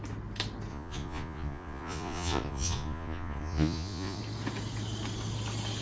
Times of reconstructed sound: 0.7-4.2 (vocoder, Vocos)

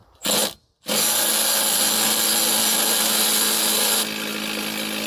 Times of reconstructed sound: none